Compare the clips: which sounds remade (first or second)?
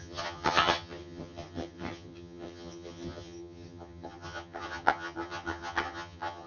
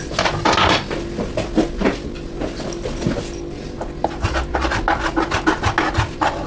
first